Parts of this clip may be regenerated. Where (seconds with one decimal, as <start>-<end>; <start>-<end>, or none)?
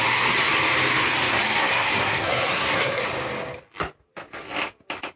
1.6-3.0